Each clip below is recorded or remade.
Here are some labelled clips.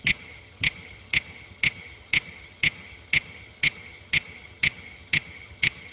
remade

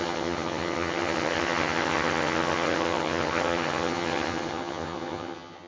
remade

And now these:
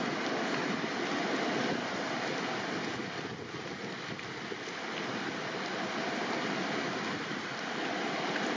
recorded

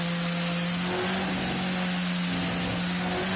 recorded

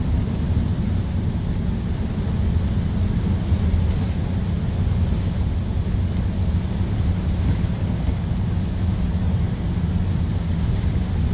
recorded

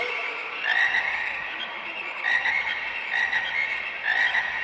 recorded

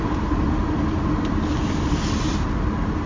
recorded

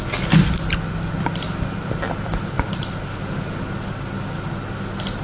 recorded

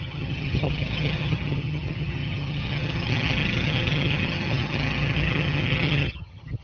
remade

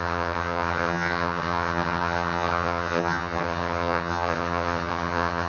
remade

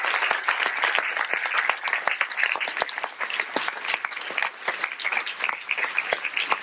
recorded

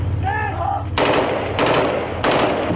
recorded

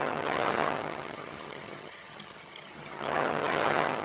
remade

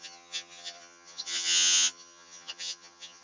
remade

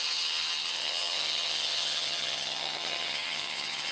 remade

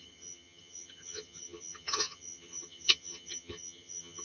remade